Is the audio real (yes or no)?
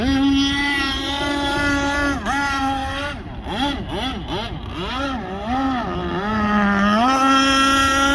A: yes